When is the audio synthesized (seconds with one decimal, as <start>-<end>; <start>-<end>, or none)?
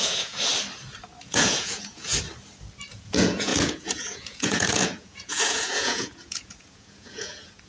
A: 0.0-0.5; 1.2-2.1; 2.9-7.7